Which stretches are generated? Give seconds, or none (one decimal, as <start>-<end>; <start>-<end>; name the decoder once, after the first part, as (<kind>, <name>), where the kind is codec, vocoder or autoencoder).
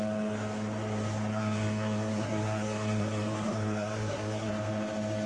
1.3-4.5 (codec, SNAC)